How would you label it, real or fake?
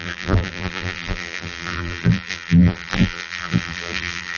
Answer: fake